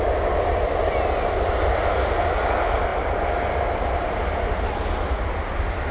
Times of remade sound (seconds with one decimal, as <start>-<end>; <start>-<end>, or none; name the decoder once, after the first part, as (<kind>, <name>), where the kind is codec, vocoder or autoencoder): none